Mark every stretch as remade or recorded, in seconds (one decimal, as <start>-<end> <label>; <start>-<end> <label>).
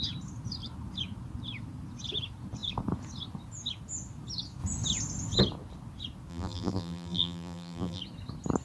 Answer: 0.0-6.3 recorded; 6.3-8.0 remade; 8.0-8.6 recorded